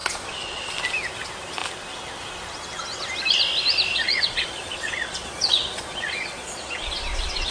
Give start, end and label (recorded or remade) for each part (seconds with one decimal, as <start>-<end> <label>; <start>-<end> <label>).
0.0-0.7 remade; 0.7-3.9 recorded; 3.9-7.5 remade